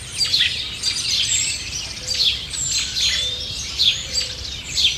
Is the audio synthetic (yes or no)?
yes